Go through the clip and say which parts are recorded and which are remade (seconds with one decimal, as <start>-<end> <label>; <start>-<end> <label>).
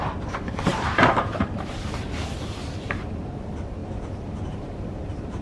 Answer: 0.0-0.7 recorded; 0.7-2.9 remade; 2.9-3.8 recorded; 3.8-5.4 remade